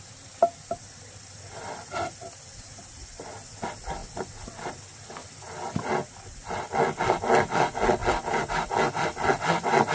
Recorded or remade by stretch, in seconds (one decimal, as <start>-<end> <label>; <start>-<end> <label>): 0.0-9.9 recorded